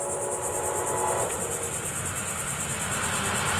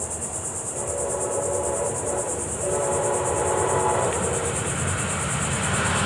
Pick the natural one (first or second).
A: first